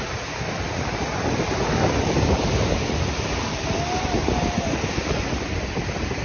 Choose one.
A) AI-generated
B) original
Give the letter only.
B